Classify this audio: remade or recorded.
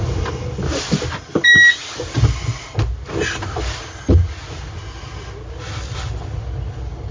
recorded